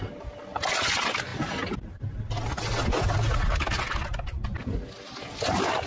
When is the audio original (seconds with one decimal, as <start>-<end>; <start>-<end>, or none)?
0.0-5.9